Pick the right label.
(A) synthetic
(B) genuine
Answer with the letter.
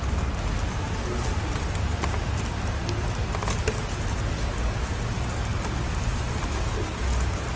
B